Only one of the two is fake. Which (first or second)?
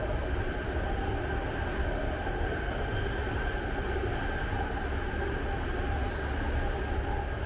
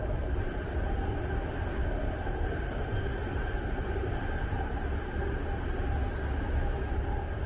second